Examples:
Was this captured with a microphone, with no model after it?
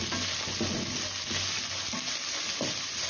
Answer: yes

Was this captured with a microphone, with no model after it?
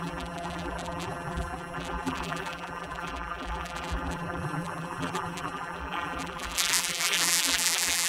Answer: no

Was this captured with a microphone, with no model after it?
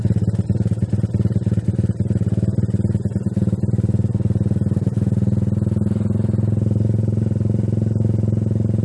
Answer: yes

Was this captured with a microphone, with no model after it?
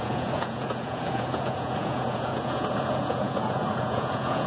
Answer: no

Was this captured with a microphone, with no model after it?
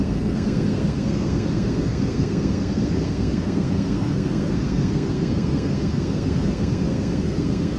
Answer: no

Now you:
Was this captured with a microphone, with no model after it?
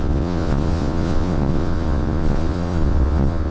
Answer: no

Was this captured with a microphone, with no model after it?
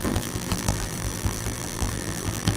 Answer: no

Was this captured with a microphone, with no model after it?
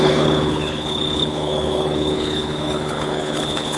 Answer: no